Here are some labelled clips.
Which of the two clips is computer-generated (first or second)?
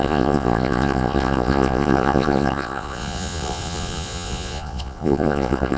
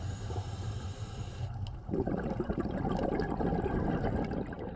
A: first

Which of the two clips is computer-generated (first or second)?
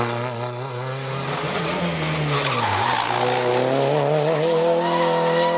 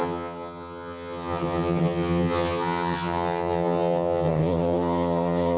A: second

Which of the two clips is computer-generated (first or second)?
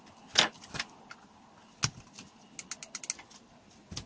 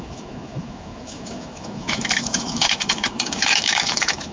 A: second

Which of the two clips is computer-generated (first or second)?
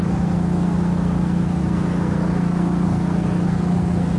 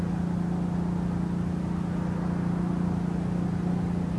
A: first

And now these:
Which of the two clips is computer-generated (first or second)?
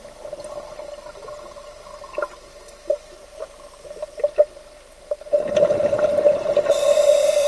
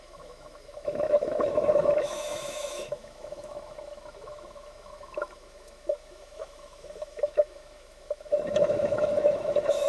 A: second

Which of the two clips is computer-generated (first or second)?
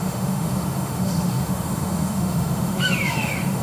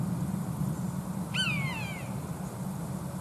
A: first